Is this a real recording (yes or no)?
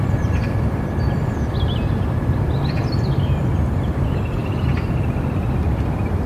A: no